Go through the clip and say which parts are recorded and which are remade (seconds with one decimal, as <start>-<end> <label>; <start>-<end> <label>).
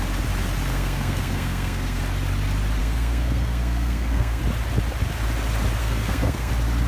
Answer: 0.0-0.7 recorded; 0.7-2.0 remade; 2.0-2.8 recorded; 2.8-4.4 remade; 4.4-5.8 recorded; 5.8-6.5 remade; 6.5-6.9 recorded